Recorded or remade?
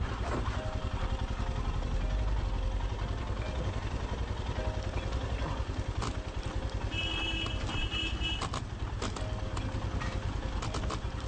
recorded